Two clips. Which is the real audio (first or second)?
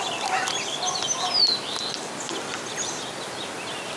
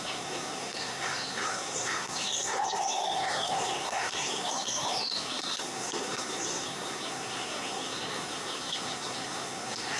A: first